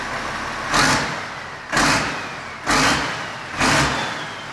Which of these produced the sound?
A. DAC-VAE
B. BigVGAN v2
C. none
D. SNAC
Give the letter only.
C